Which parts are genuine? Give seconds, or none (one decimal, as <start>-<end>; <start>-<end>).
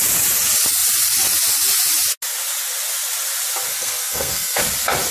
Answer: 0.0-3.7; 4.6-5.1